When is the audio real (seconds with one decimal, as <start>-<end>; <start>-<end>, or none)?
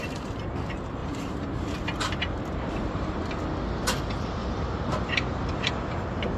0.0-1.0; 3.1-4.4; 5.7-6.4